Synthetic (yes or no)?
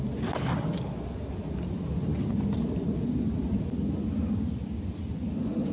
no